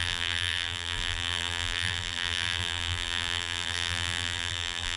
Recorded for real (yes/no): no